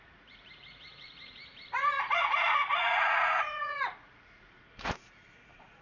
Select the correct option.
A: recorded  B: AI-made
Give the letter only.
B